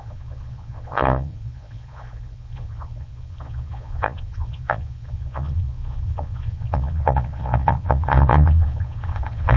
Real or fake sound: fake